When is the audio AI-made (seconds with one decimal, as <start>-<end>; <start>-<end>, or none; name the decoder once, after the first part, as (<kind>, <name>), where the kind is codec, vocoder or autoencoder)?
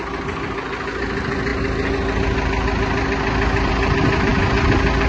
none